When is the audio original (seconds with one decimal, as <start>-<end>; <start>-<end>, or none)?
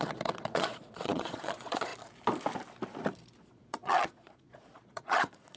1.9-3.5